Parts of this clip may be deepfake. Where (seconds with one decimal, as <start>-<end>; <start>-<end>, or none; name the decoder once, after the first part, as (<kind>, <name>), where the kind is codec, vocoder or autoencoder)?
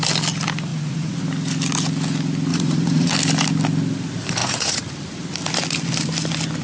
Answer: 0.7-1.2 (vocoder, Vocos); 2.5-3.1; 4.4-4.9